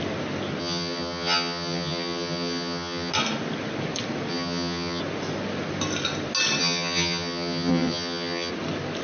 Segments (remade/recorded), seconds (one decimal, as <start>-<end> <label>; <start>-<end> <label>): 0.0-0.6 recorded; 0.6-3.1 remade; 3.1-4.3 recorded; 4.3-5.0 remade; 5.0-6.6 recorded; 6.6-8.5 remade; 8.5-9.0 recorded